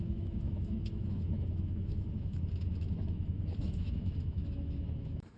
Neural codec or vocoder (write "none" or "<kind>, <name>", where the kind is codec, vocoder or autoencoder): autoencoder, DAC-VAE